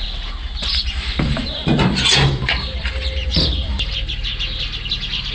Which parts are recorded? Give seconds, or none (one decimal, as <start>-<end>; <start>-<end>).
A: 0.0-0.7; 3.9-5.3